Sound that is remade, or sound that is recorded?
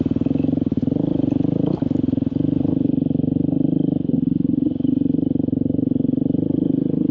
recorded